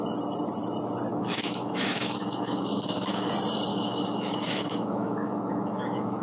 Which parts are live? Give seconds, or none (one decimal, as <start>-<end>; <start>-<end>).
0.0-1.1; 3.3-3.7